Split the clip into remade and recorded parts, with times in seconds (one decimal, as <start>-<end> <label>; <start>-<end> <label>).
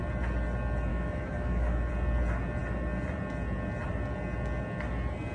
0.0-0.9 recorded; 0.9-1.9 remade; 1.9-5.3 recorded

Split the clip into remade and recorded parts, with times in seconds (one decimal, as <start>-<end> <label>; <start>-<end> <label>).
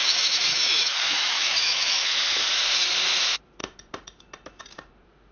0.0-2.2 remade; 2.2-5.3 recorded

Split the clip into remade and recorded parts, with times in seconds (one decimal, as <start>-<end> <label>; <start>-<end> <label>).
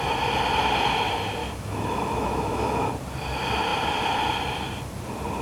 0.0-1.4 recorded; 1.4-2.9 remade; 2.9-5.4 recorded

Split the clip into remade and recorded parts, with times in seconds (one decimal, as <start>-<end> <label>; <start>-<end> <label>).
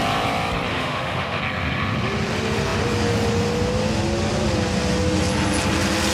0.0-0.7 recorded; 0.7-1.4 remade; 1.4-6.1 recorded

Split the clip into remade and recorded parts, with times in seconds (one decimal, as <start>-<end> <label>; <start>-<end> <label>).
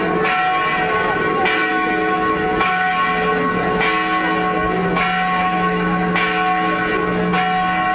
0.0-1.7 recorded; 1.7-2.9 remade; 2.9-5.4 recorded; 5.4-6.1 remade; 6.1-7.9 recorded